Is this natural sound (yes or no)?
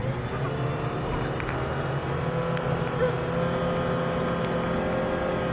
yes